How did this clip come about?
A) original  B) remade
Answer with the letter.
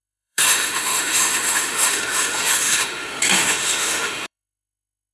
B